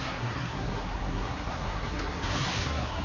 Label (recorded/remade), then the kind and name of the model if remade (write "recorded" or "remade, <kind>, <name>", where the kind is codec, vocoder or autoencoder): remade, codec, SNAC